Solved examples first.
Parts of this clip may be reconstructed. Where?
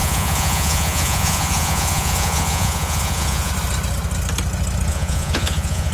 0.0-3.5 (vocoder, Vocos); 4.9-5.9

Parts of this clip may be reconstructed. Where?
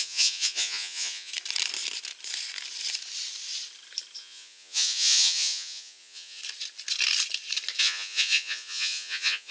0.0-1.3 (vocoder, Vocos); 4.2-6.4; 7.8-9.5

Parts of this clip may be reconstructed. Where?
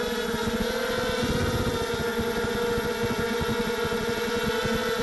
none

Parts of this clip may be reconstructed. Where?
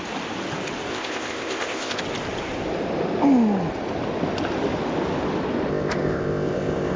0.9-2.0 (codec, ZipCodec); 5.7-7.0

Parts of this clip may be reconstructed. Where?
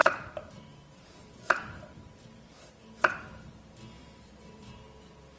0.0-3.2 (vocoder, BigVGAN v2); 4.0-4.8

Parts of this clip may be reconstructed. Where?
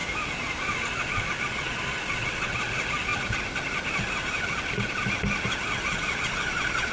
0.9-3.1 (vocoder, Vocos); 5.6-6.9